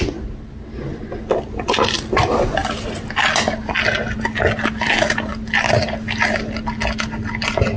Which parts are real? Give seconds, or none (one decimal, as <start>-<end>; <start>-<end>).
0.0-7.8